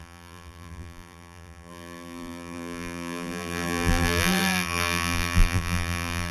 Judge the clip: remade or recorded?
remade